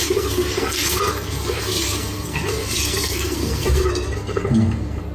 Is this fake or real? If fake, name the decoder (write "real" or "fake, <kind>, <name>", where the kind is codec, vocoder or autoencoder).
fake, codec, SNAC